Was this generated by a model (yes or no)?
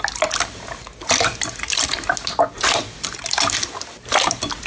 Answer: no